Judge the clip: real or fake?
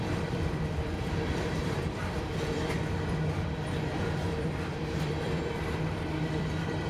fake